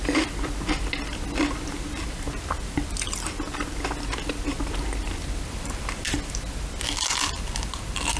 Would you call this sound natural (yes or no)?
yes